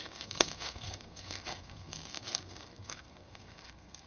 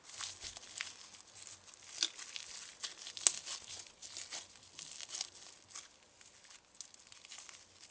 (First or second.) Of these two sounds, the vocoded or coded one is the first